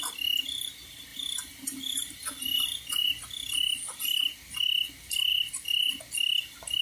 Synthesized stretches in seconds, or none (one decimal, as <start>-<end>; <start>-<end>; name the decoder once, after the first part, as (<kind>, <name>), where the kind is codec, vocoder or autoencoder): 1.1-3.1 (vocoder, BigVGAN v2); 5.3-6.0